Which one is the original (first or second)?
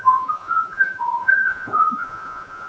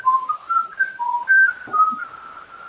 second